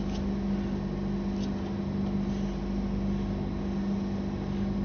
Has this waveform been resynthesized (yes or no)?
no